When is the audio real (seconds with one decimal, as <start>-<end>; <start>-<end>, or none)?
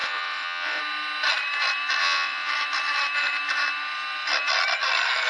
0.8-2.0; 2.5-5.3